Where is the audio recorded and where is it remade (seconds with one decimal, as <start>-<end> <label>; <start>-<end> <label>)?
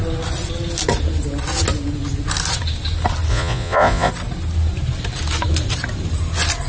0.0-3.3 recorded; 3.3-4.1 remade; 4.1-6.7 recorded